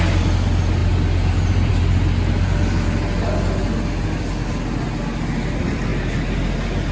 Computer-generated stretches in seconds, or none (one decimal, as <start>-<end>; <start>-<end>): none